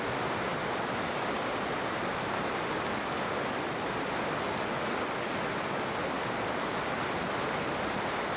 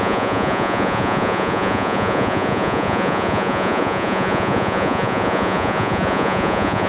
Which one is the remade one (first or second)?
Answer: second